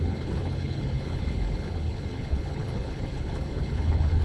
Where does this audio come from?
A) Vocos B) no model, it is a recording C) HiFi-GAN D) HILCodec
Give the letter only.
D